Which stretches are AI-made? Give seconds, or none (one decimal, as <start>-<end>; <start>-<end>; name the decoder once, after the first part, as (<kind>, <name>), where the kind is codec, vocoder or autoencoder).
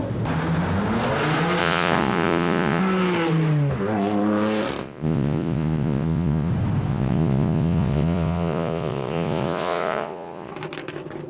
1.6-2.8 (vocoder, Vocos); 4.8-6.5; 6.9-10.5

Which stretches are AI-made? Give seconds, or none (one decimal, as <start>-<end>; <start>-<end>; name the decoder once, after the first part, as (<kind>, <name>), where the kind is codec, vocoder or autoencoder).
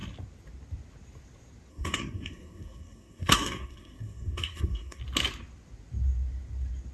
1.7-5.0 (codec, SNAC)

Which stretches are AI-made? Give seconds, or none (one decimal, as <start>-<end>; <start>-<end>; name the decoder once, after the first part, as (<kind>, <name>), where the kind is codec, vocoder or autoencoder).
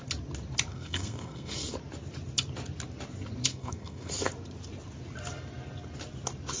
0.7-1.5 (codec, SNAC); 3.5-4.1